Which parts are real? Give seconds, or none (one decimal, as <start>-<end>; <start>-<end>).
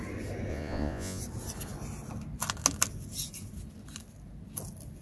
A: 0.0-0.5; 1.2-5.0